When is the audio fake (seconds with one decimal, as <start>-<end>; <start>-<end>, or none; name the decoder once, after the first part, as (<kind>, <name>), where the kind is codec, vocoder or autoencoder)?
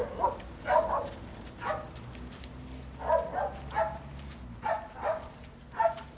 none